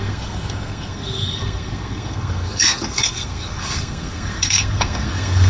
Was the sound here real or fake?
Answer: fake